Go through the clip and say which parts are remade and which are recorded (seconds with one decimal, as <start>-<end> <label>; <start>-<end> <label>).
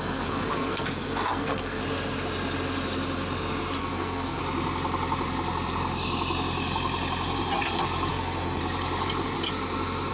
0.0-1.8 remade; 1.8-3.8 recorded; 3.8-4.4 remade; 4.4-8.1 recorded; 8.1-8.6 remade; 8.6-10.1 recorded